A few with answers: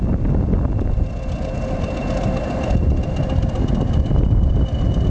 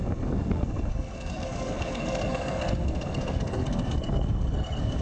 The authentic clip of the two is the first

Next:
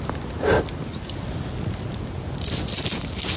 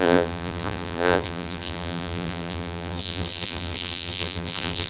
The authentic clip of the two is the first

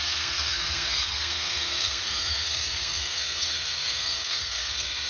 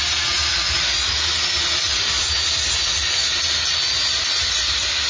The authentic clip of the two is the second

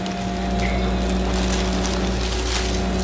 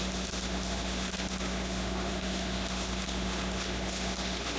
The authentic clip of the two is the first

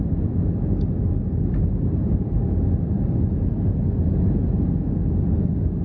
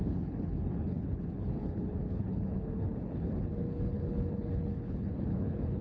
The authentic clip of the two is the first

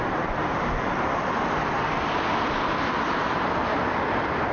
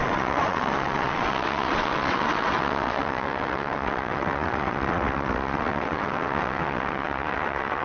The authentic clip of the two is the first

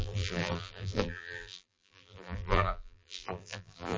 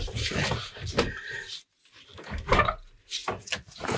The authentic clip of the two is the second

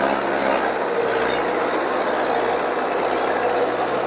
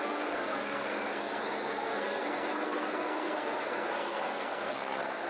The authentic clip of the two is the first